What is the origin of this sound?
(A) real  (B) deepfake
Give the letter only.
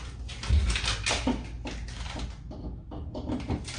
A